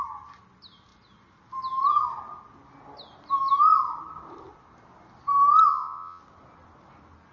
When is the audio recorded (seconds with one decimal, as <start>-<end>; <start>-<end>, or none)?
0.0-5.7; 6.2-7.3